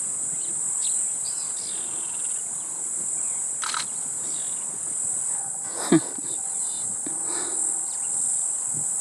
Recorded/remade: recorded